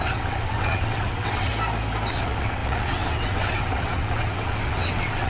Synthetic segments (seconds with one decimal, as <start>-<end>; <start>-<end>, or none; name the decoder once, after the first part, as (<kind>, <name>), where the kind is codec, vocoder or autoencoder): 0.0-1.5 (vocoder, WaveNeXt); 2.1-5.3